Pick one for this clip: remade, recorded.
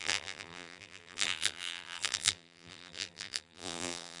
remade